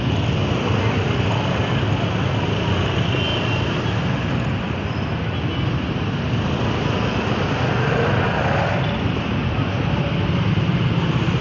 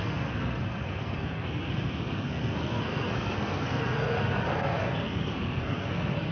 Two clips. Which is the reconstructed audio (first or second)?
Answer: second